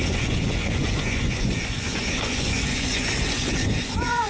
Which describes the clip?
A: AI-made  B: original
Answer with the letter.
A